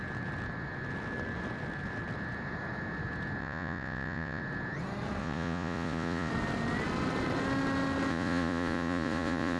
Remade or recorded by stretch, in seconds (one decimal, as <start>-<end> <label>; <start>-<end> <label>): 0.0-3.4 recorded; 3.4-4.4 remade; 4.4-5.2 recorded; 5.2-6.3 remade; 6.3-8.1 recorded; 8.1-9.6 remade